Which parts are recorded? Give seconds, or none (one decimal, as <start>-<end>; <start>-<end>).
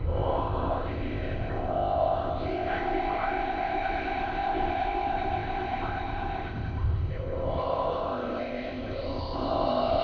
none